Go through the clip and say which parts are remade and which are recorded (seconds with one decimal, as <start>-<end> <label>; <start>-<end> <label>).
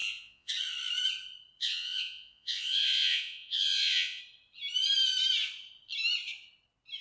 0.0-0.5 remade; 0.5-1.6 recorded; 1.6-4.2 remade; 4.2-7.0 recorded